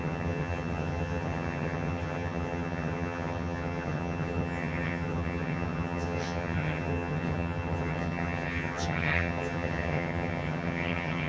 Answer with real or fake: fake